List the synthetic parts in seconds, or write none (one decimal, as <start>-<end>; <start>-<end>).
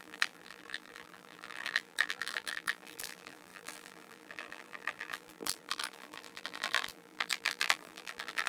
0.0-8.5